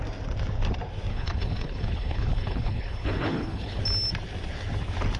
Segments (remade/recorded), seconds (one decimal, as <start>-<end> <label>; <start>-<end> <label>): 0.0-1.1 recorded; 1.1-3.8 remade; 3.8-5.2 recorded